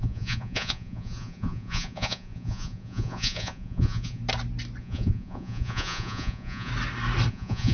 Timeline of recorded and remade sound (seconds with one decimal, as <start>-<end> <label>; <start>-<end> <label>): 0.0-4.2 remade; 4.2-4.8 recorded; 4.8-6.7 remade; 6.7-7.3 recorded; 7.3-7.7 remade